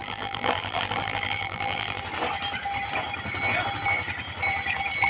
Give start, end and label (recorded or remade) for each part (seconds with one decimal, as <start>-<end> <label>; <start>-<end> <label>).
0.0-2.0 remade; 2.0-5.1 recorded